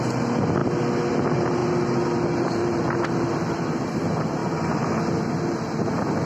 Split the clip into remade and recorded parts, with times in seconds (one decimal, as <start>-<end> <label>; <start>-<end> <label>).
0.0-6.3 recorded